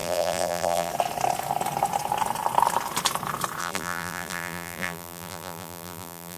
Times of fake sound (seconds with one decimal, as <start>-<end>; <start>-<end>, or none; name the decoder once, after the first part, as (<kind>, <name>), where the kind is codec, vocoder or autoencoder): 0.0-0.9 (vocoder, BigVGAN v2); 3.6-6.4